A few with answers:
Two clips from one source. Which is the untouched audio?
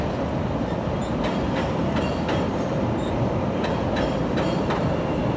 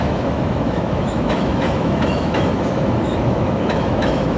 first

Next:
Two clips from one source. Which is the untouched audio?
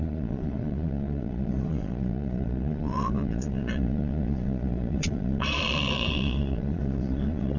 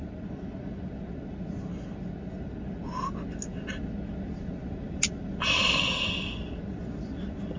second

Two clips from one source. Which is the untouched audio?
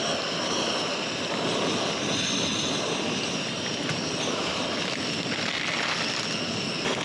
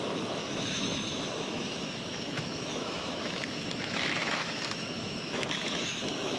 first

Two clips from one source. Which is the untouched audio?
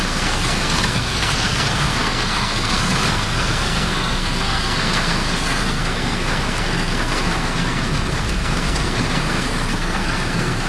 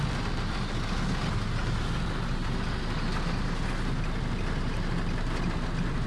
second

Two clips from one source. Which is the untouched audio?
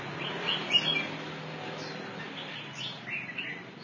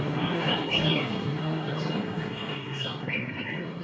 first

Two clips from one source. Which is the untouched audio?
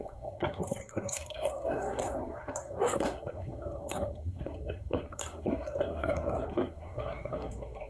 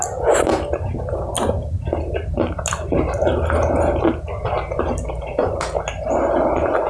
second